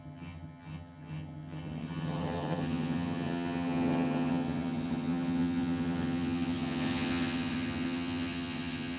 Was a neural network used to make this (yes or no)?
yes